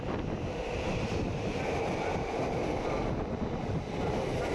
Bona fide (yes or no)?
yes